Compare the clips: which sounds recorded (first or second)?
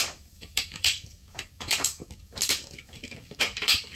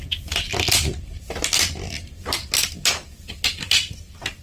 second